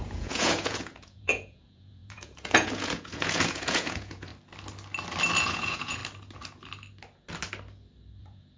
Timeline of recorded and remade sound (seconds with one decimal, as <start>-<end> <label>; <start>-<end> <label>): 0.0-4.3 remade; 4.3-5.4 recorded; 5.4-6.0 remade; 6.0-8.2 recorded; 8.2-8.6 remade